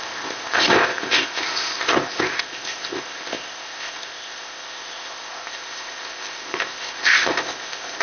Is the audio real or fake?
fake